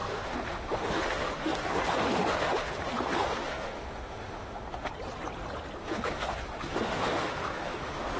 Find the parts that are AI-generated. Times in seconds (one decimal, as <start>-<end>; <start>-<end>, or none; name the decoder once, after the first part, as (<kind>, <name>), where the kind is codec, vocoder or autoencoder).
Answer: 0.0-4.9 (autoencoder, DAC-VAE); 5.8-8.2